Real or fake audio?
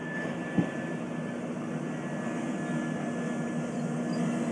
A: real